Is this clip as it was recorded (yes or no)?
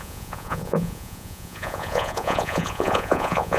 no